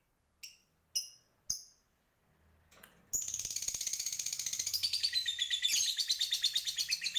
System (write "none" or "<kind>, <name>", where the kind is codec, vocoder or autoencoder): none